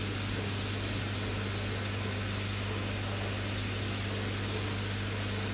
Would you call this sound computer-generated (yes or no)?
no